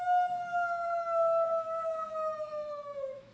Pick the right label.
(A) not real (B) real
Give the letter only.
A